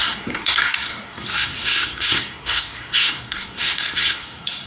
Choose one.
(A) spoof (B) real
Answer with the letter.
A